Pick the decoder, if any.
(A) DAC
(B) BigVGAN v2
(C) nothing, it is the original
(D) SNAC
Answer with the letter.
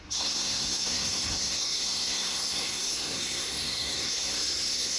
D